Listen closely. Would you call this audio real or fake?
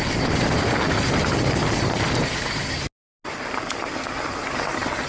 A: real